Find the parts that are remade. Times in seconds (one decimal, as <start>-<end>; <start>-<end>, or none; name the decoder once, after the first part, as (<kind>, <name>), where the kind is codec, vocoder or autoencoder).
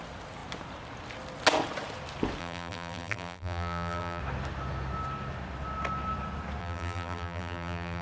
2.4-4.2 (vocoder, BigVGAN v2); 6.6-8.0